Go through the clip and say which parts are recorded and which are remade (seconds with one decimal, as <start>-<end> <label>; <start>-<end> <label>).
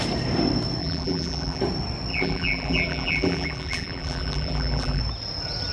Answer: 0.0-0.8 recorded; 0.8-1.6 remade; 1.6-2.1 recorded; 2.1-5.0 remade; 5.0-5.7 recorded